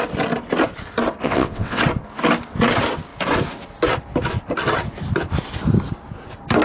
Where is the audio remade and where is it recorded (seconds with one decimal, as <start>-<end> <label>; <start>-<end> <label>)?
0.0-1.2 recorded; 1.2-1.8 remade; 1.8-6.6 recorded